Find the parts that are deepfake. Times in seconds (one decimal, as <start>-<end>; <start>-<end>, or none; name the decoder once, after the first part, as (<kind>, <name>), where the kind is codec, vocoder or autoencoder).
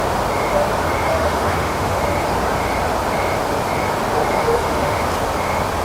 1.1-2.0 (autoencoder, DAC-VAE); 4.4-5.0